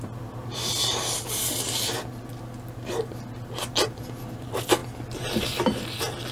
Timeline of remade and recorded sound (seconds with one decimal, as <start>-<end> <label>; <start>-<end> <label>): 0.0-6.3 recorded